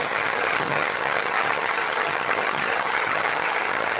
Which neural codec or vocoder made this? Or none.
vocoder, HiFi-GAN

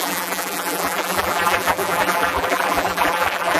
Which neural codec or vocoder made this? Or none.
vocoder, BigVGAN v2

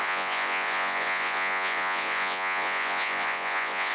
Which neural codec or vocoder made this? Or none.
vocoder, Vocos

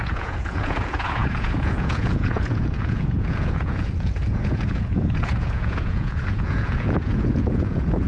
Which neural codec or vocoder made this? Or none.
vocoder, Vocos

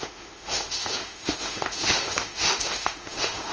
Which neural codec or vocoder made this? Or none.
autoencoder, DAC-VAE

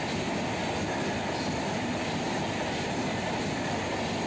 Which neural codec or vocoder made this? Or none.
none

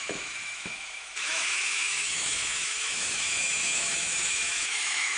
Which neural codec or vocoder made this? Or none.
autoencoder, DAC-VAE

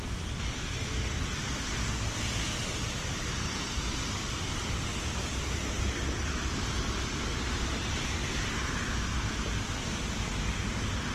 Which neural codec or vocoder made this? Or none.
none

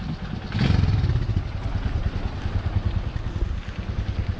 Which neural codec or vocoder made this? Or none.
none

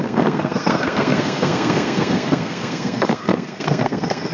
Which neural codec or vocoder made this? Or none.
codec, SNAC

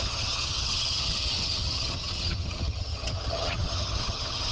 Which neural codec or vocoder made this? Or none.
vocoder, HiFi-GAN